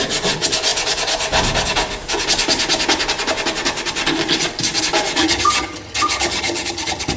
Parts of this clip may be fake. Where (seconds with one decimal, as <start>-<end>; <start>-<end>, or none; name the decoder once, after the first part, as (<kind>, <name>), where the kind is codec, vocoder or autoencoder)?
5.2-7.2 (vocoder, HiFi-GAN)